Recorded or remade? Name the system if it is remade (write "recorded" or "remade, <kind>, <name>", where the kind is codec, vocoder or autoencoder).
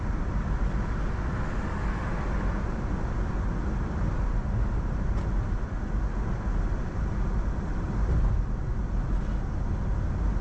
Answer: recorded